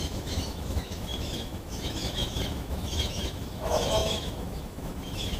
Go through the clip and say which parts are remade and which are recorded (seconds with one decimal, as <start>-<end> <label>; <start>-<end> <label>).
0.0-5.4 remade